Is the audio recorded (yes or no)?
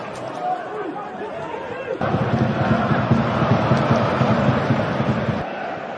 yes